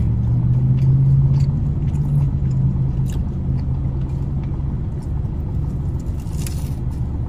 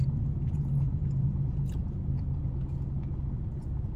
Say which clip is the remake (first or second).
second